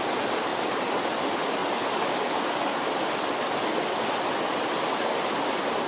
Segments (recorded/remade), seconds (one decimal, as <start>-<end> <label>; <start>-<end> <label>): 0.0-5.9 recorded